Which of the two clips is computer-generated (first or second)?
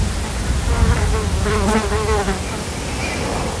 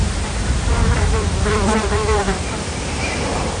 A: second